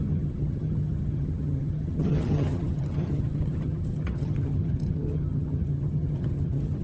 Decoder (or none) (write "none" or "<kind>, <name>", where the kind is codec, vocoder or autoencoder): vocoder, HiFi-GAN